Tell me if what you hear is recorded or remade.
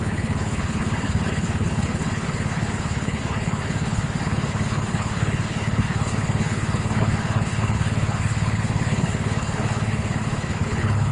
remade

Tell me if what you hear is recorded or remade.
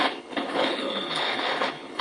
remade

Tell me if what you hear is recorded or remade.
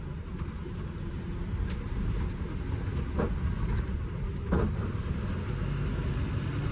recorded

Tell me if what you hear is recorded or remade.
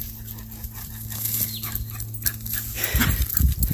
recorded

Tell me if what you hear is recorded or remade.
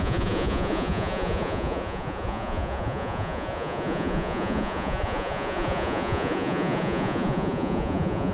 remade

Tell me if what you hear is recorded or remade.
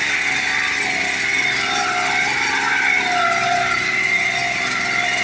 recorded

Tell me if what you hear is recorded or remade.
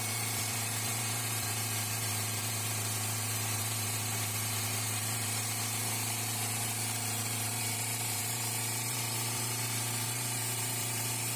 remade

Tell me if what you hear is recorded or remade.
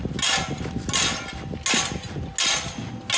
recorded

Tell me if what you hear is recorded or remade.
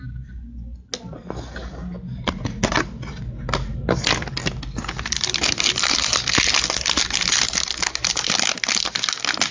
recorded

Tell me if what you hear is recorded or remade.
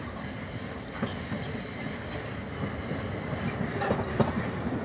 recorded